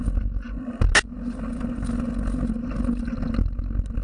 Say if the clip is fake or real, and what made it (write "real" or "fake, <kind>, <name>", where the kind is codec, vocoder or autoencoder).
real